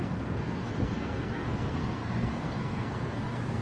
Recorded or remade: remade